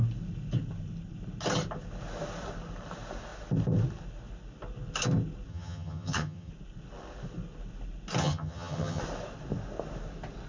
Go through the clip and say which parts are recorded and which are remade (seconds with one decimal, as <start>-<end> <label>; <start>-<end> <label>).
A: 0.0-5.5 recorded; 5.5-6.5 remade; 6.5-8.2 recorded; 8.2-9.0 remade; 9.0-10.5 recorded